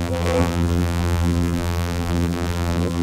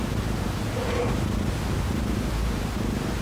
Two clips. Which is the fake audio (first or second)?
first